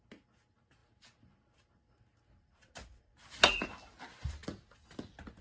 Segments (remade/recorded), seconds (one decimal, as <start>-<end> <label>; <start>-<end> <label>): 0.0-5.4 recorded